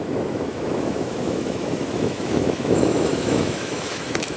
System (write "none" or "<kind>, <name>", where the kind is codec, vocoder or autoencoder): autoencoder, DAC-VAE